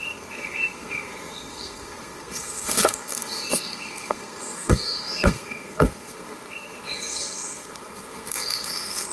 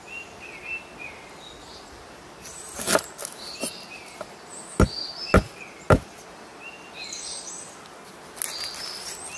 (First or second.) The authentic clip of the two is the second